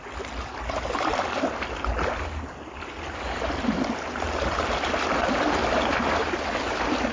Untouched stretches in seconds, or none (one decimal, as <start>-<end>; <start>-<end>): 0.0-5.6; 6.4-7.1